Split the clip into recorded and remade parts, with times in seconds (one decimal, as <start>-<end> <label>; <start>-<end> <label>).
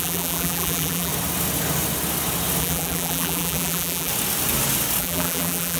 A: 0.0-1.1 remade; 1.1-2.6 recorded; 2.6-4.1 remade; 4.1-5.0 recorded; 5.0-5.8 remade